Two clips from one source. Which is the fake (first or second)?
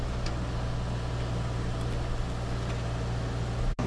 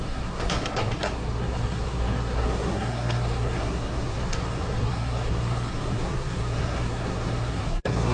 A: second